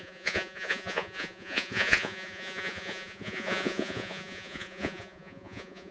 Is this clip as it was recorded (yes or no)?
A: no